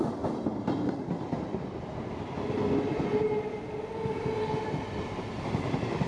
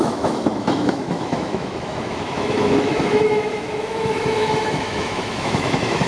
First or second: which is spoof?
second